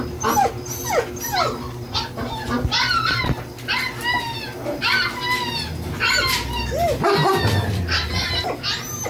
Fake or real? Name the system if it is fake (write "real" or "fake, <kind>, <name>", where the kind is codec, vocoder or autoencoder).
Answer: real